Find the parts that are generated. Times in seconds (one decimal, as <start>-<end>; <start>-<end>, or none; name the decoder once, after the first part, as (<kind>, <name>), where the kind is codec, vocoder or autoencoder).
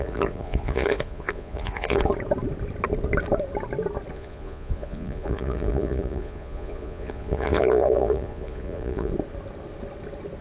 0.0-2.1 (vocoder, Vocos); 4.1-9.1